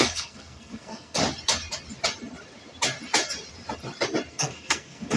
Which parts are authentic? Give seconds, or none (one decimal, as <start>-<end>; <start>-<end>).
1.2-4.3